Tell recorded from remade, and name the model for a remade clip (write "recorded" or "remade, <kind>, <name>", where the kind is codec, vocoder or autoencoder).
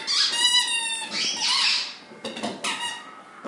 recorded